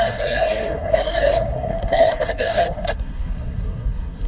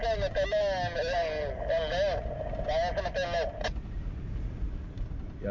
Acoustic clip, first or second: second